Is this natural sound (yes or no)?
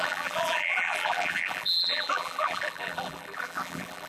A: no